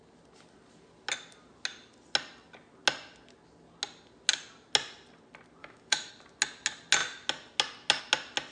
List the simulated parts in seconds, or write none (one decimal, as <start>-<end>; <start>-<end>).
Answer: 5.6-6.1